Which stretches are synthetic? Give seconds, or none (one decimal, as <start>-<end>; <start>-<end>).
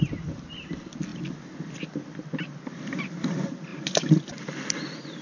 0.0-1.1; 2.7-5.2